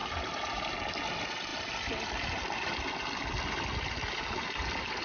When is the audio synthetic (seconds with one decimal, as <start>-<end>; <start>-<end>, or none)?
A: none